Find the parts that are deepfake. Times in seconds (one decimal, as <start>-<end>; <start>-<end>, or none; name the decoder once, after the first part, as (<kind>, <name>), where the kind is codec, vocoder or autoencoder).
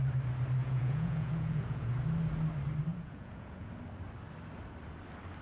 0.6-1.9 (vocoder, Vocos); 2.9-3.7